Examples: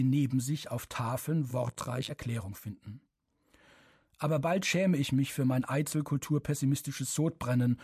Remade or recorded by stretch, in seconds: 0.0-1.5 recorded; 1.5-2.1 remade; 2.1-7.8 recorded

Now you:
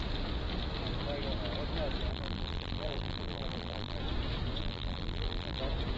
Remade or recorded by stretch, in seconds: 0.0-2.1 recorded; 2.1-4.0 remade; 4.0-4.6 recorded; 4.6-5.6 remade; 5.6-6.0 recorded

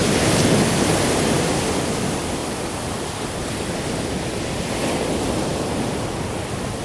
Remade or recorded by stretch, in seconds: 0.0-0.9 remade; 0.9-2.4 recorded; 2.4-3.6 remade; 3.6-5.5 recorded; 5.5-6.8 remade

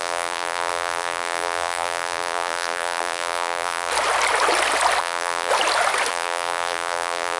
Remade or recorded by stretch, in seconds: 0.0-3.9 remade; 3.9-5.0 recorded; 5.0-5.5 remade; 5.5-6.1 recorded; 6.1-7.4 remade

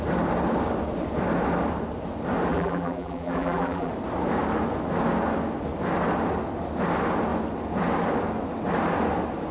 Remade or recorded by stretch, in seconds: 0.0-2.5 recorded; 2.5-3.9 remade; 3.9-9.5 recorded